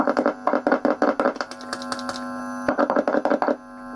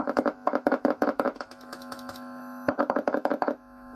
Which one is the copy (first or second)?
second